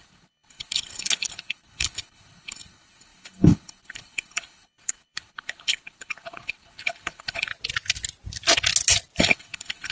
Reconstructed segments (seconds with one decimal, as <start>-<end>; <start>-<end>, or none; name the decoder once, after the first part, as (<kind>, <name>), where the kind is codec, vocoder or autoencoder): 0.0-7.5 (codec, HILCodec); 9.2-9.9